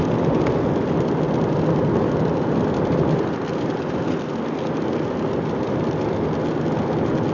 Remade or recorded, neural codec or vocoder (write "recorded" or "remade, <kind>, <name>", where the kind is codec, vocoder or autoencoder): recorded